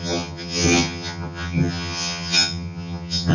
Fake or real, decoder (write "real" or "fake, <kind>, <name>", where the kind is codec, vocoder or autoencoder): fake, vocoder, HiFi-GAN